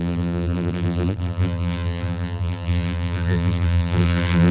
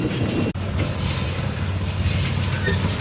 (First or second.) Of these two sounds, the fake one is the first